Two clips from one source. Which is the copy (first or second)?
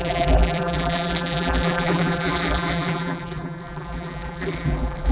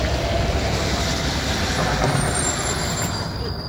first